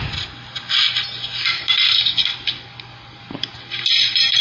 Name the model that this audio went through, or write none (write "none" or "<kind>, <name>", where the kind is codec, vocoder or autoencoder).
none